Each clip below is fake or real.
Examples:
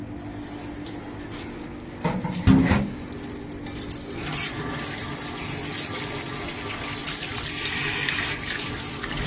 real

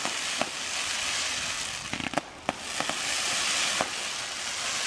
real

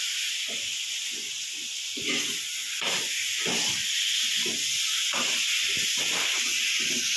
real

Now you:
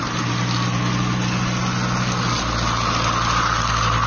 real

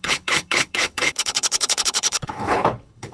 fake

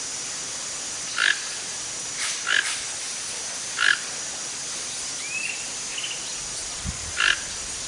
real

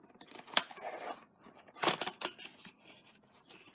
real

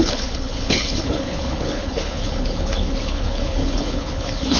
fake